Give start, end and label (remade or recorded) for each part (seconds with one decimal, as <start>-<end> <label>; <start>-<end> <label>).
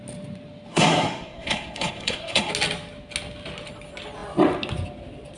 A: 0.0-0.7 recorded; 0.7-2.5 remade; 2.5-5.4 recorded